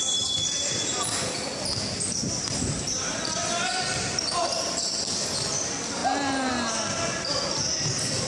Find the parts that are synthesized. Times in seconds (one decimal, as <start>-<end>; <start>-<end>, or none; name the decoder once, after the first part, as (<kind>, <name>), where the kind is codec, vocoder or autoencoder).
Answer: none